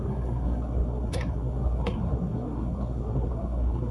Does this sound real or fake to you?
fake